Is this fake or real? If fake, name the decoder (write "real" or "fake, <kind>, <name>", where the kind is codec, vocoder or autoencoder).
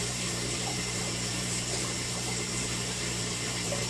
fake, vocoder, BigVGAN v2